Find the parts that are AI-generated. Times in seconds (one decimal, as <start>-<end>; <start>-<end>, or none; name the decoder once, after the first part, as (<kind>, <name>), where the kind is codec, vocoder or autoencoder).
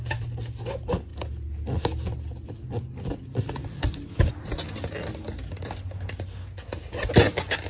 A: none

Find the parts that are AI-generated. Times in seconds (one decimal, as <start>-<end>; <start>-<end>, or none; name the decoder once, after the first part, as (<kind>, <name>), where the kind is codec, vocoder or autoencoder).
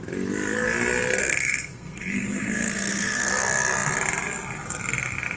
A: 1.2-3.3 (codec, SNAC)